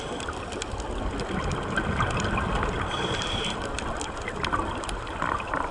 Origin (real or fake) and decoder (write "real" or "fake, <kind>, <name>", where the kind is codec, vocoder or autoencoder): fake, vocoder, BigVGAN v2